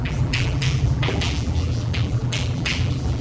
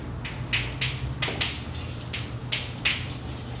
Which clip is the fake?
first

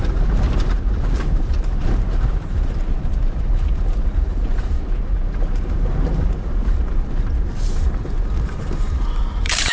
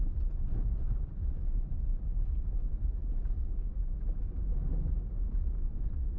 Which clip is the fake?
first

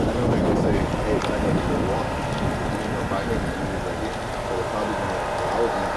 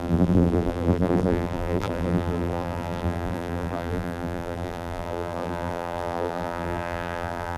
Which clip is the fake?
second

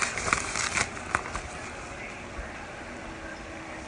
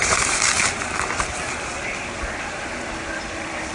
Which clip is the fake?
second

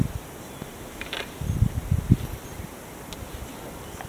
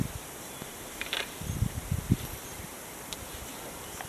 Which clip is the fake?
second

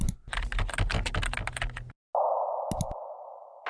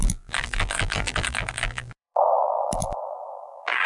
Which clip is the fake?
second